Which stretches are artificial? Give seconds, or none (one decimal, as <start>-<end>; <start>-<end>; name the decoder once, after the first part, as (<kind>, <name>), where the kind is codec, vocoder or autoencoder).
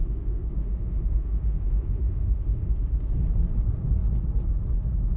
0.0-3.1 (autoencoder, DAC-VAE)